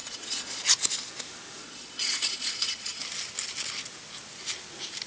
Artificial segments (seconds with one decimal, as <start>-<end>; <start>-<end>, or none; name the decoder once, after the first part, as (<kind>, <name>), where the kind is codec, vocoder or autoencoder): 0.0-0.6 (vocoder, Vocos); 1.6-3.0